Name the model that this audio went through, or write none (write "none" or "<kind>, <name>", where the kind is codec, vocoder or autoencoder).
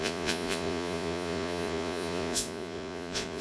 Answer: vocoder, Vocos